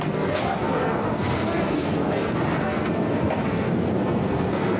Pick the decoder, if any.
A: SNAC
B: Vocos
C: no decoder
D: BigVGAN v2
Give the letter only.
A